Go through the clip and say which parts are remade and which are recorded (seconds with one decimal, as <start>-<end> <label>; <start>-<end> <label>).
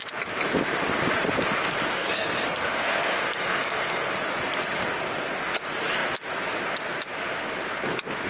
0.0-1.9 recorded; 1.9-4.1 remade; 4.1-8.3 recorded